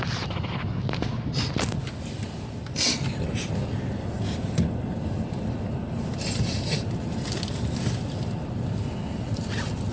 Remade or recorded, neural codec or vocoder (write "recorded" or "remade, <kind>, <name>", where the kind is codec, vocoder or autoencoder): recorded